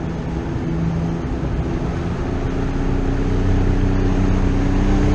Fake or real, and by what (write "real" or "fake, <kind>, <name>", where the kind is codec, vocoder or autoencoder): real